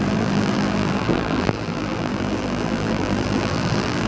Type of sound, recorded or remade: remade